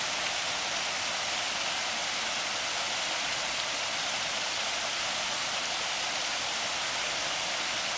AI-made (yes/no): no